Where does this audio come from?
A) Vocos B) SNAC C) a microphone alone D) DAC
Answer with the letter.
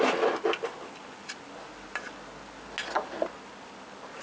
C